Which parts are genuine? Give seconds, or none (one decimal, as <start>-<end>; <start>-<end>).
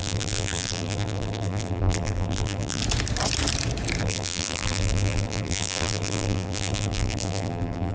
2.8-4.0